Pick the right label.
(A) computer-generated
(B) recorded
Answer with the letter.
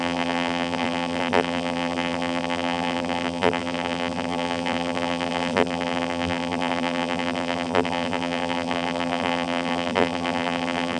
A